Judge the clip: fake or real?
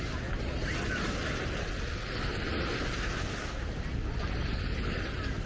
real